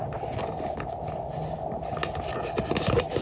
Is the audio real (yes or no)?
yes